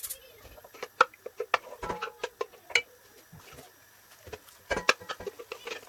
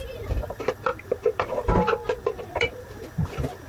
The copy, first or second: second